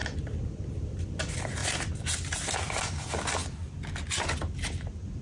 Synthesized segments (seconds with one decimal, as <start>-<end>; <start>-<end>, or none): 0.0-1.2; 1.6-2.8